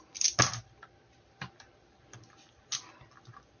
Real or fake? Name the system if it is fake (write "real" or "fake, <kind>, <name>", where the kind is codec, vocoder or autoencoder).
real